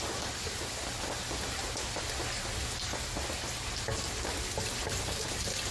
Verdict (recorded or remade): recorded